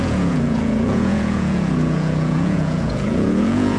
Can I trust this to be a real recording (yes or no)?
no